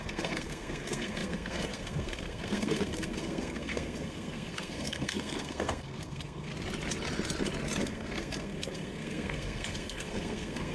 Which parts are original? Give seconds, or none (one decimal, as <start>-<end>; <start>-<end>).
6.5-7.8